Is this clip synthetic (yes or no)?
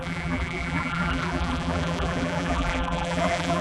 yes